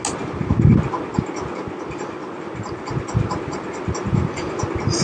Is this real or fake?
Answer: real